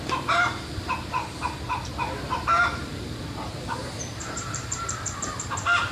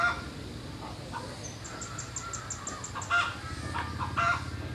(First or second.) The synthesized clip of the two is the first